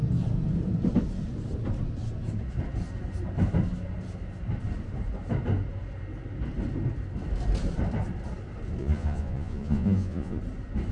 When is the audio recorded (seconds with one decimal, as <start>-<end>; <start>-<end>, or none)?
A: 0.0-8.8; 10.4-10.9